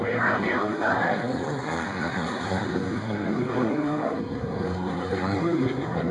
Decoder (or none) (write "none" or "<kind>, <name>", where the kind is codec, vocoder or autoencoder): codec, SNAC